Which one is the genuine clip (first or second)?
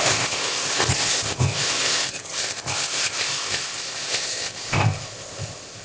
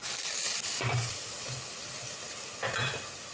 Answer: second